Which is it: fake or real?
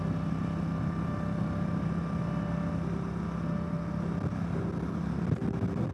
real